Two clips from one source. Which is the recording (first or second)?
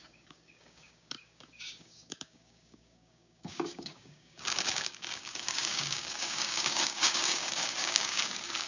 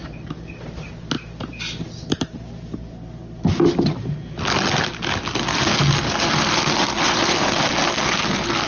second